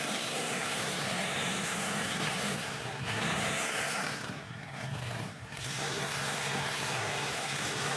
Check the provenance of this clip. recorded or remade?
remade